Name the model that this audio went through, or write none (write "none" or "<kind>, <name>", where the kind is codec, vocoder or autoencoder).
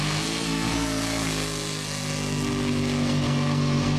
codec, SNAC